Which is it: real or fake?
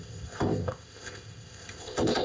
fake